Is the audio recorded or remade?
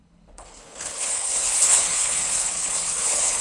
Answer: remade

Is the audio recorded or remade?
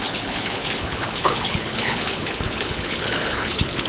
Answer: remade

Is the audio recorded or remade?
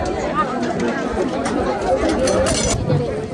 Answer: recorded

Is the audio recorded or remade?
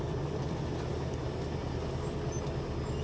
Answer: recorded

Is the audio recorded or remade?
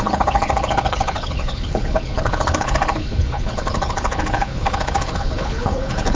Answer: remade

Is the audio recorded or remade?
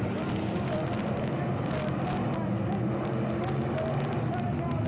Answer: recorded